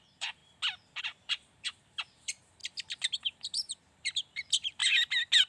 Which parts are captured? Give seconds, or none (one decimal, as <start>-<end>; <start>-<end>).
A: 0.4-1.0; 2.6-3.2; 4.8-5.5